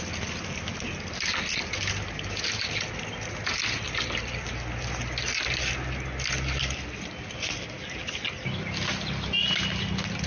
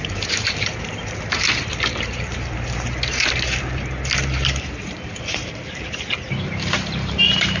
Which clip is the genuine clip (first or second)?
first